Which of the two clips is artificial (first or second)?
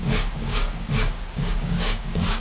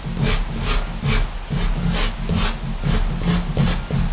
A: first